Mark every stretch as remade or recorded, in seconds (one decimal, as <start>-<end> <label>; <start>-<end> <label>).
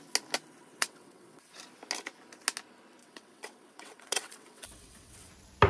0.0-0.7 recorded; 0.7-1.6 remade; 1.6-3.0 recorded; 3.0-5.3 remade; 5.3-5.7 recorded